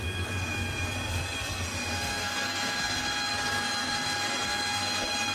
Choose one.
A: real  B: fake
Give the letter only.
B